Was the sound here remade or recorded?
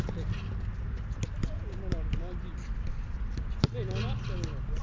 recorded